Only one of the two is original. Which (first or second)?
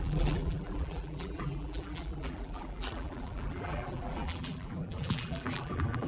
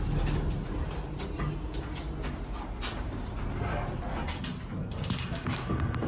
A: second